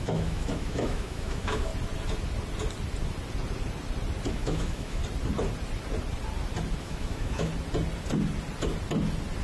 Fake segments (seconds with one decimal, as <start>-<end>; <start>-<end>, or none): 0.0-1.7; 4.3-5.0; 6.8-7.5

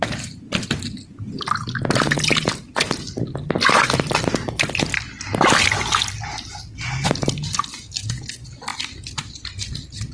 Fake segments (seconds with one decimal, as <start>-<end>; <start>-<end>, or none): none